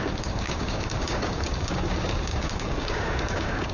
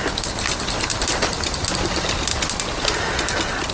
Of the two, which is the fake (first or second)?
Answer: first